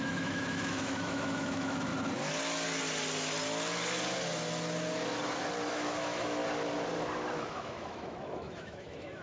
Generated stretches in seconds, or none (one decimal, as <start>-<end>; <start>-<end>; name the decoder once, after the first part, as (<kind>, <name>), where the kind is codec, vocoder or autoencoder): 0.0-1.9 (autoencoder, DAC-VAE); 5.7-6.4; 7.3-9.2